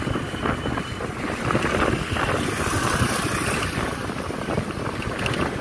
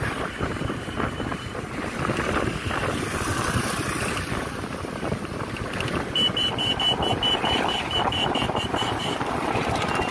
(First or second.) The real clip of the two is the first